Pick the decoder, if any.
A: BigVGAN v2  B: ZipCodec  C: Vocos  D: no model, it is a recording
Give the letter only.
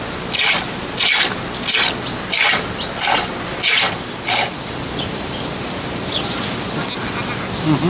D